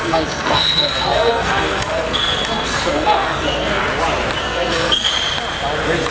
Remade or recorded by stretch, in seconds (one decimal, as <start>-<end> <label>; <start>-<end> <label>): 0.0-3.8 remade; 3.8-4.4 recorded; 4.4-5.1 remade; 5.1-6.1 recorded